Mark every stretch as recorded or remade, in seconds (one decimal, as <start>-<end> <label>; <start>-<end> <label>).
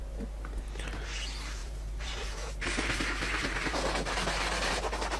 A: 0.0-1.6 recorded; 1.6-4.7 remade; 4.7-5.2 recorded